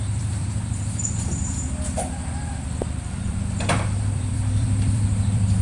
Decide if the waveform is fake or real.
fake